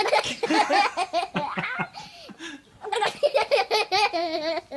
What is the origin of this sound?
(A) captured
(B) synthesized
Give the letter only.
A